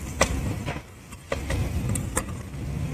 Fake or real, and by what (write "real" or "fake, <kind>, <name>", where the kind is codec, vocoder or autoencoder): fake, vocoder, BigVGAN v2